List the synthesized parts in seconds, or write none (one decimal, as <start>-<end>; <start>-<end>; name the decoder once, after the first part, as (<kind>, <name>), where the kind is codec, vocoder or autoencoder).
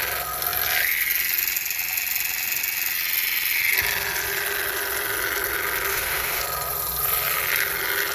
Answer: 5.9-6.4 (autoencoder, DAC-VAE)